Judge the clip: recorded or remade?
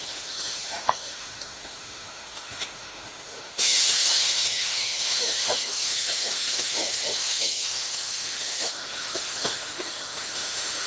remade